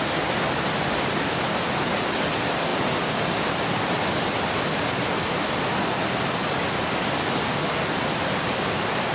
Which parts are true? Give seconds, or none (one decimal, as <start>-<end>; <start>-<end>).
0.0-9.1